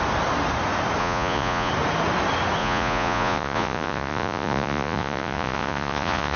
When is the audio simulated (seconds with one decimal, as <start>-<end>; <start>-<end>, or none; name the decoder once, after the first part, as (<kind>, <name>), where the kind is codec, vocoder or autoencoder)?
1.0-1.7 (vocoder, Vocos); 2.6-6.4